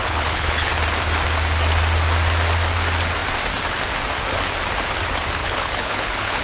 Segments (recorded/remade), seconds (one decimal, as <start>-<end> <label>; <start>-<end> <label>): 0.0-0.7 remade; 0.7-5.4 recorded; 5.4-6.4 remade

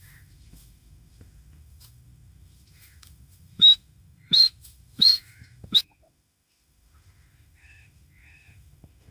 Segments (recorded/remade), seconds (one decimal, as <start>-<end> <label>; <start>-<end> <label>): 0.0-9.1 remade

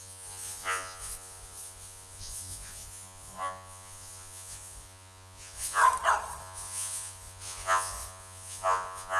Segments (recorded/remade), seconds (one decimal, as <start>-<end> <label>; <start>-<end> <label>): 0.0-5.8 remade; 5.8-6.4 recorded; 6.4-9.2 remade

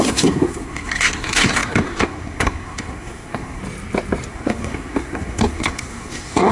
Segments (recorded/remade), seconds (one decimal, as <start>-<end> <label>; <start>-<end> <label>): 0.0-3.6 remade; 3.6-4.3 recorded; 4.3-6.5 remade

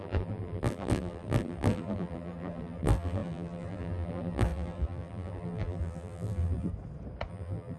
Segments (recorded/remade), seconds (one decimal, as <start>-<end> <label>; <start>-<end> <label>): 0.0-6.7 remade; 6.7-7.3 recorded; 7.3-7.8 remade

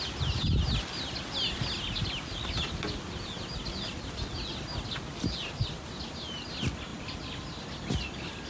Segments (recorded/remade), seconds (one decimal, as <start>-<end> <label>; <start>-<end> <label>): 0.0-6.9 recorded; 6.9-7.6 remade; 7.6-8.5 recorded

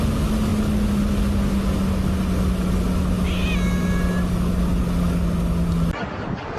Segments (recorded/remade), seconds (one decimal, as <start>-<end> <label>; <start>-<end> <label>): 0.0-6.6 recorded